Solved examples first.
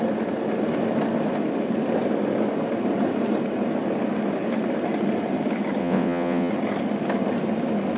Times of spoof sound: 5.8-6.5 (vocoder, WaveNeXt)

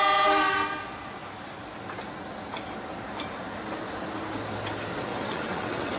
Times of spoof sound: 5.1-6.0 (vocoder, WaveNeXt)

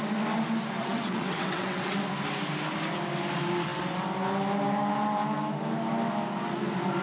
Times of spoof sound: 0.8-1.9 (vocoder, WaveNeXt)

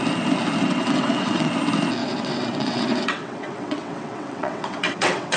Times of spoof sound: 0.6-1.5 (vocoder, WaveNeXt); 2.0-5.4

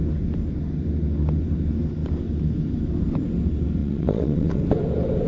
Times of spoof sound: 3.8-4.6 (vocoder, WaveNeXt)

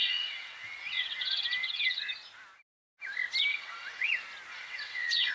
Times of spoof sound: 0.0-2.0 (vocoder, WaveNeXt); 3.5-4.1; 4.5-5.3

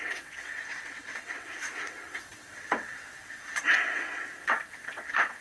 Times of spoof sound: 0.0-5.4 (vocoder, WaveNeXt)

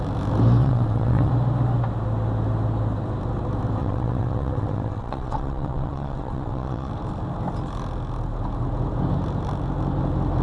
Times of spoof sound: 0.6-1.3 (vocoder, WaveNeXt); 3.8-6.9